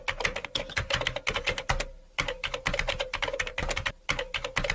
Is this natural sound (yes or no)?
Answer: yes